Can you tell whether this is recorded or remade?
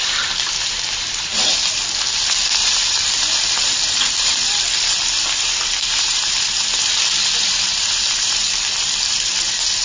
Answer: remade